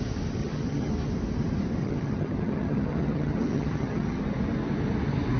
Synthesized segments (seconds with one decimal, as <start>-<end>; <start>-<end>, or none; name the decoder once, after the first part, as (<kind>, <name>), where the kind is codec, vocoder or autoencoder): 0.4-0.9 (vocoder, HiFi-GAN); 1.8-4.2